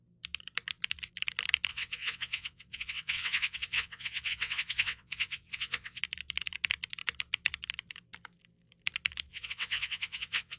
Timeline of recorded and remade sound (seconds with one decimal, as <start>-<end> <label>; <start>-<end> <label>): 0.0-1.7 recorded; 1.7-6.0 remade; 6.0-9.3 recorded; 9.3-10.6 remade